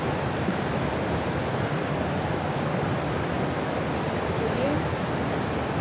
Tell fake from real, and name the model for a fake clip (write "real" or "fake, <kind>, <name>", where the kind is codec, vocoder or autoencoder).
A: real